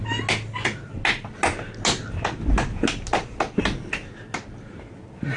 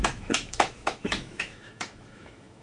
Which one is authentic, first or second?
first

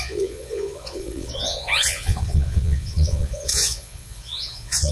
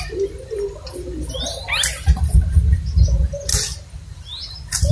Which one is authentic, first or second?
second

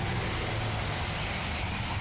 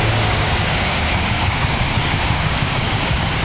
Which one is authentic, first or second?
first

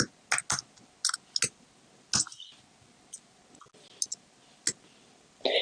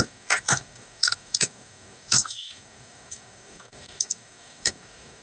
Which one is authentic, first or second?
first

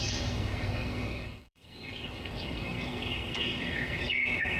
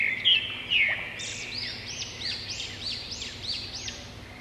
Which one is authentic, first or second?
second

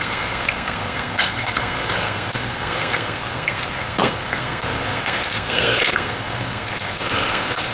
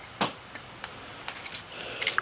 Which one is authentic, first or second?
second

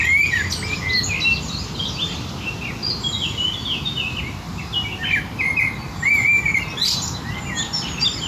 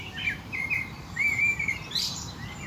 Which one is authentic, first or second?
first